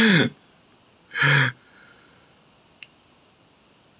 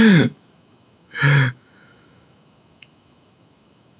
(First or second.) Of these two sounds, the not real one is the second